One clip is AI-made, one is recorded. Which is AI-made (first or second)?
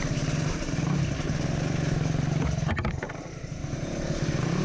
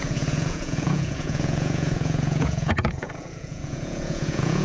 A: second